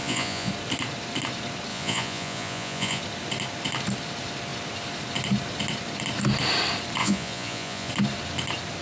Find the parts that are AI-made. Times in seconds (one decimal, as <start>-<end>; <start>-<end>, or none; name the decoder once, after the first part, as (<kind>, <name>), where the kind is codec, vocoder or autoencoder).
0.0-0.5 (vocoder, Vocos); 1.7-3.0; 7.0-7.9